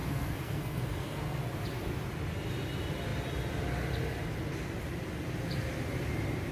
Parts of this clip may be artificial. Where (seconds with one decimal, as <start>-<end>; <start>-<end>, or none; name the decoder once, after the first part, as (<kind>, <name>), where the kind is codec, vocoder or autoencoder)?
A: 0.0-1.4 (codec, SNAC)